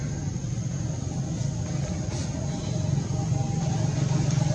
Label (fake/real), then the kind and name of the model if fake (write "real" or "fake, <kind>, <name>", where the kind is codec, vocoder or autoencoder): real